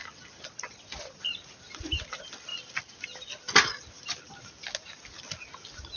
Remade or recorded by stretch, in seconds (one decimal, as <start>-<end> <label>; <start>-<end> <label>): 0.0-6.0 recorded